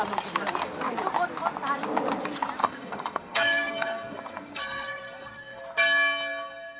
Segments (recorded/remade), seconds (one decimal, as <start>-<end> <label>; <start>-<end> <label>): 0.0-2.6 recorded; 2.6-5.6 remade; 5.6-6.8 recorded

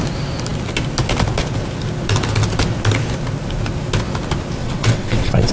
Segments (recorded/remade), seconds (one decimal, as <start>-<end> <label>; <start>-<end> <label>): 0.0-4.6 recorded; 4.6-5.5 remade

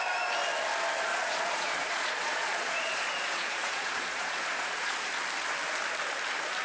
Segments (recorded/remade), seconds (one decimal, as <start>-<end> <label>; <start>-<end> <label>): 0.0-1.1 recorded; 1.1-5.1 remade; 5.1-6.6 recorded

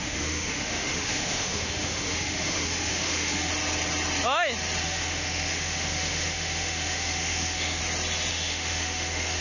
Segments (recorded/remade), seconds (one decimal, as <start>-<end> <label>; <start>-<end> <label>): 0.0-3.5 remade; 3.5-4.8 recorded; 4.8-7.8 remade; 7.8-8.3 recorded; 8.3-9.4 remade

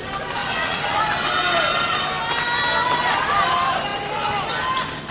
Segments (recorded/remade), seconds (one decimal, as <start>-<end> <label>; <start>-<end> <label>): 0.0-0.4 recorded; 0.4-1.0 remade; 1.0-5.1 recorded

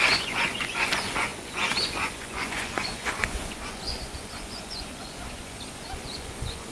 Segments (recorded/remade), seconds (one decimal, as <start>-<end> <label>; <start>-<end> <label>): 0.0-6.7 remade

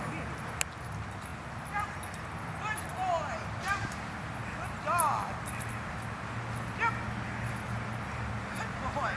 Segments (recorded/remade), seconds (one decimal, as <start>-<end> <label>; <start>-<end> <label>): 0.0-9.2 recorded